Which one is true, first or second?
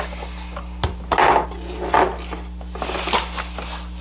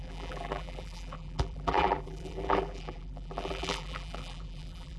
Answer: first